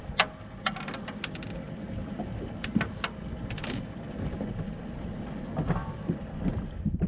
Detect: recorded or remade recorded